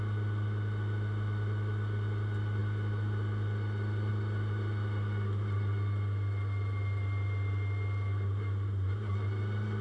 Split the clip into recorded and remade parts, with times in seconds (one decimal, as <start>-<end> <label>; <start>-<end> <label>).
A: 0.0-9.8 recorded